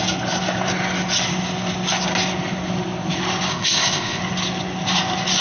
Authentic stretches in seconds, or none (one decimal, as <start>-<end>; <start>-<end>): 0.0-3.5; 4.2-5.4